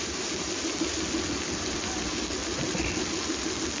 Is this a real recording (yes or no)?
yes